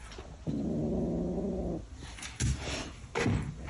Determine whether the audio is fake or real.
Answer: real